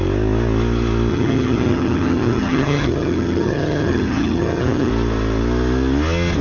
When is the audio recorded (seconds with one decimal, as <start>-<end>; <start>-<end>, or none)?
0.0-1.1; 4.9-6.4